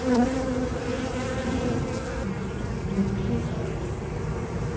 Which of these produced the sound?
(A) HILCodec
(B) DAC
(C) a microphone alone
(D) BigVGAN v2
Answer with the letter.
C